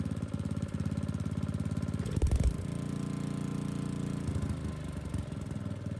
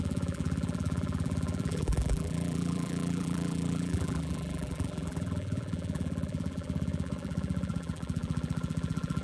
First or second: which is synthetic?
second